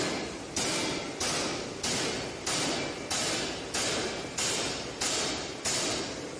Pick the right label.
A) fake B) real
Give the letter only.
B